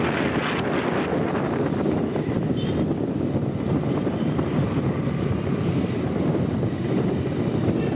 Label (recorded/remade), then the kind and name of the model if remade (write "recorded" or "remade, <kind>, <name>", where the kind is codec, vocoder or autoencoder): recorded